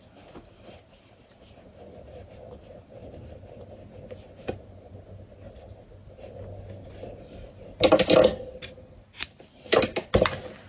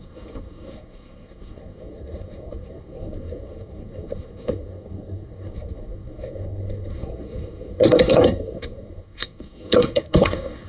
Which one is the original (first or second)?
first